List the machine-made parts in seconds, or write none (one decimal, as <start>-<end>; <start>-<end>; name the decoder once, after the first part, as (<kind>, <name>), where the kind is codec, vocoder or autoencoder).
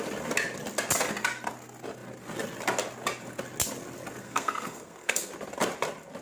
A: 4.2-5.3 (codec, SNAC)